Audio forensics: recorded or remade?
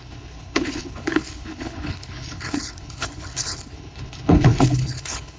remade